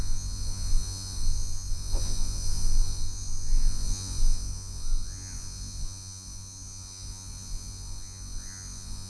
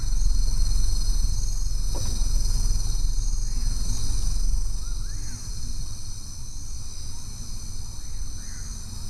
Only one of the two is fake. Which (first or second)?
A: first